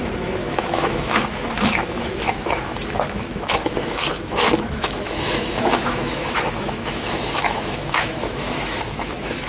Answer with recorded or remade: remade